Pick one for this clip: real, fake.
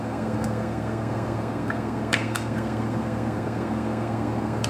fake